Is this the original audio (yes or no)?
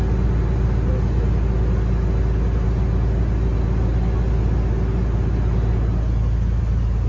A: yes